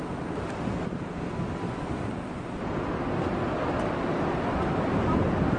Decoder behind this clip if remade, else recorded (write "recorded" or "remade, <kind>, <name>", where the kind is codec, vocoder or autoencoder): recorded